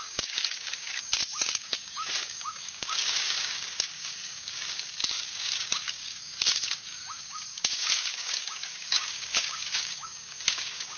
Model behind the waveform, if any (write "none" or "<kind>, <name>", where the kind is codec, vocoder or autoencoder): codec, DAC